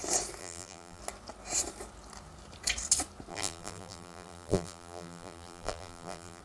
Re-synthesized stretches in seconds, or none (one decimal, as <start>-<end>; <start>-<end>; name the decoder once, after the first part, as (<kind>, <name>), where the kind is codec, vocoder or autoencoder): 0.4-1.0 (vocoder, BigVGAN v2); 3.3-6.4